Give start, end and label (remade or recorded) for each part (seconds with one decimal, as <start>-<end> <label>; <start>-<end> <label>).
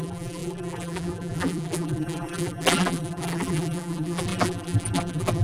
0.0-5.4 remade